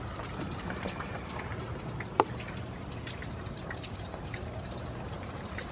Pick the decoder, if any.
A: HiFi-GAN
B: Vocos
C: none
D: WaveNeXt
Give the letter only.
C